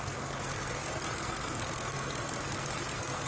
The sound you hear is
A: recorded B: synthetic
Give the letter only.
B